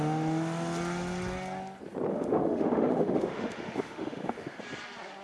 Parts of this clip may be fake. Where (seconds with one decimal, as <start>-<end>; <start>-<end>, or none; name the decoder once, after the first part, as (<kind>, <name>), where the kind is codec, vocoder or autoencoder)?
2.1-4.6 (autoencoder, DAC-VAE)